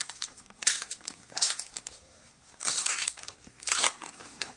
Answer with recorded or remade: remade